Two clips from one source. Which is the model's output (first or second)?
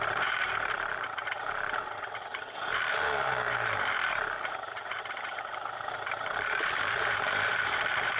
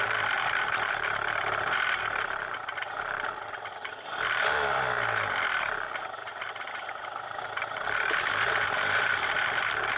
first